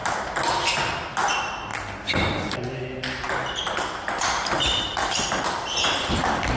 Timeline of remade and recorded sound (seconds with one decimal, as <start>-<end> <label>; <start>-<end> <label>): 0.0-6.6 recorded